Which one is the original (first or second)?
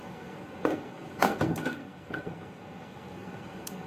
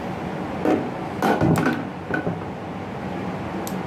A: second